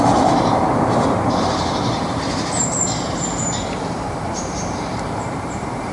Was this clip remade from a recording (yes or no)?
yes